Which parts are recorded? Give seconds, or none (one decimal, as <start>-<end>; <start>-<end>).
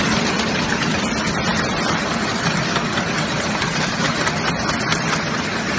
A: 0.0-5.8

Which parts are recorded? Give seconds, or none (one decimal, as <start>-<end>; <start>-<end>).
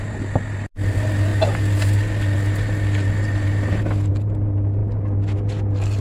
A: 0.0-6.0